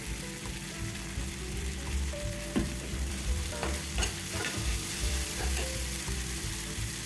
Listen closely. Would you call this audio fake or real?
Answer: fake